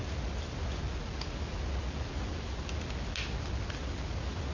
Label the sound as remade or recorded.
recorded